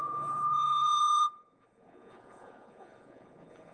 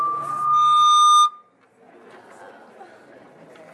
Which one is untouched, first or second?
second